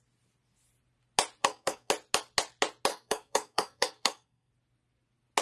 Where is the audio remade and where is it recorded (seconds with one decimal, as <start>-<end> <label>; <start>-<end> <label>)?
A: 0.0-1.4 recorded; 1.4-1.9 remade; 1.9-2.9 recorded; 2.9-4.5 remade; 4.5-5.4 recorded